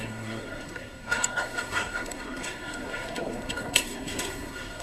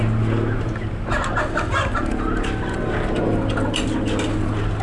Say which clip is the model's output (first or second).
first